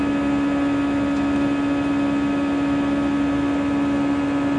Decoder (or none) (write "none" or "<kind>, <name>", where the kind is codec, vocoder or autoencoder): none